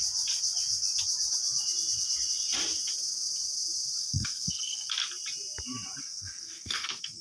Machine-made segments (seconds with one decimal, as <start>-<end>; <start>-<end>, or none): 4.0-4.9; 6.0-7.2